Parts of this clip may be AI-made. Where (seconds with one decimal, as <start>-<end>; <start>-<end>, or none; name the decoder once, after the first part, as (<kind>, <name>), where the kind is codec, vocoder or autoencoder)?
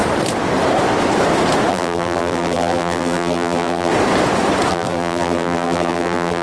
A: 1.7-3.9 (vocoder, BigVGAN v2); 4.7-6.4